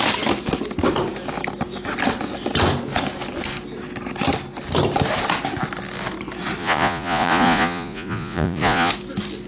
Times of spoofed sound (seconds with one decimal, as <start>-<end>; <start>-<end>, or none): 6.6-8.9